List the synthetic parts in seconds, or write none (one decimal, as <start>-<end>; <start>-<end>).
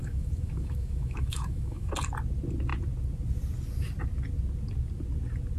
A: 0.0-1.9